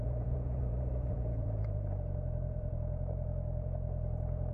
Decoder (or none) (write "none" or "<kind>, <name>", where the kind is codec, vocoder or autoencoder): vocoder, Vocos